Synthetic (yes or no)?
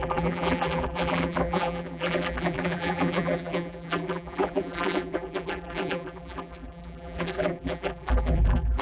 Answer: yes